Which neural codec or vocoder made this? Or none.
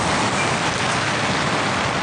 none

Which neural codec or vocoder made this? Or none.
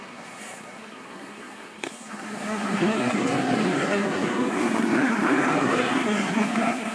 codec, SNAC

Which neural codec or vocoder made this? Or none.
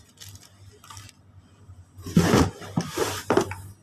none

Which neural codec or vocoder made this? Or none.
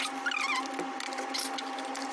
none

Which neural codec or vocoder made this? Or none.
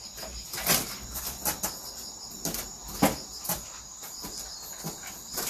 none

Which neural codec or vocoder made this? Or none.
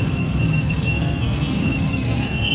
codec, SNAC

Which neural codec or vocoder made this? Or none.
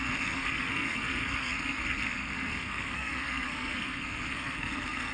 codec, SNAC